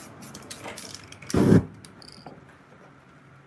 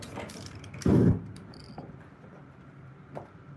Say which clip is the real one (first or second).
first